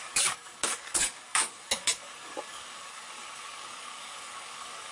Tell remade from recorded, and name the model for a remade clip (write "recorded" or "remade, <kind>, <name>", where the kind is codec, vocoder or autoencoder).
remade, codec, DAC